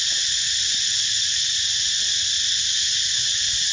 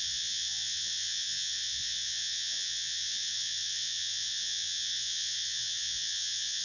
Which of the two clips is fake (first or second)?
second